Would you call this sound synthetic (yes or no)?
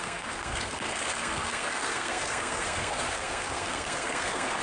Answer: yes